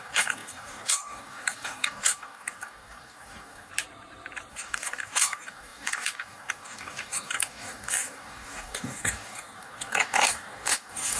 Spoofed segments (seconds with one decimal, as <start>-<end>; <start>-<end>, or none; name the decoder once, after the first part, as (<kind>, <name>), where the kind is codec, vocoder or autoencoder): 0.0-3.7 (codec, DAC); 4.5-11.2